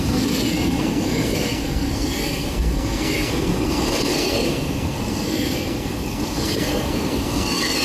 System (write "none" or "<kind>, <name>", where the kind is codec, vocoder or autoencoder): codec, SNAC